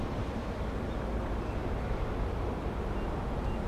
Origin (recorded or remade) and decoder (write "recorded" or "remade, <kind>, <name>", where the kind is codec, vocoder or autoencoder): recorded